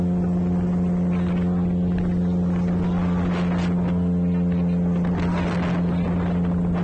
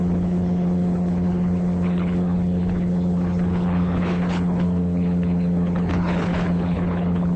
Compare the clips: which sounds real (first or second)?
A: first